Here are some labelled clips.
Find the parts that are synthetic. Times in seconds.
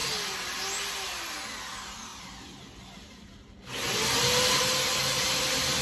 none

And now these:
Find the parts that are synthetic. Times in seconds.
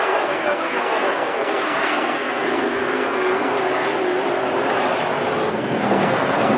0.0-3.5; 5.5-6.6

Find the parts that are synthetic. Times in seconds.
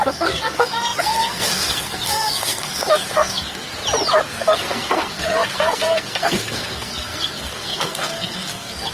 0.0-3.7; 4.3-8.9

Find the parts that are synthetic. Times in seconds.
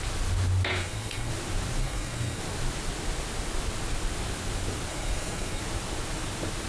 0.7-1.3; 1.8-2.4; 4.9-5.6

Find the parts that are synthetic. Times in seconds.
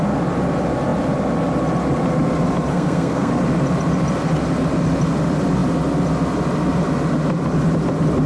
2.7-3.3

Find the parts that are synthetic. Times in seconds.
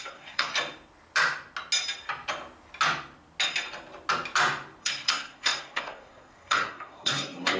0.0-0.5; 4.8-7.6